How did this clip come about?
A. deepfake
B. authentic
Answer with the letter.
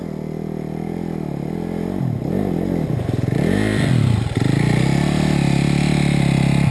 B